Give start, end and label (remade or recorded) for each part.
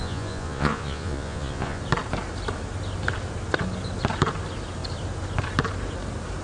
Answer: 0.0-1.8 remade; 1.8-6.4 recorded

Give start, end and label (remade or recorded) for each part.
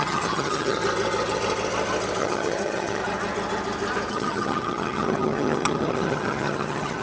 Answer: 0.0-0.8 remade; 0.8-2.2 recorded; 2.2-3.0 remade; 3.0-4.1 recorded; 4.1-7.0 remade